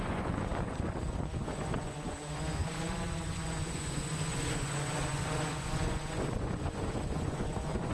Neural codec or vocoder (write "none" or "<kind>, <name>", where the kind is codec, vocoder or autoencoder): vocoder, Vocos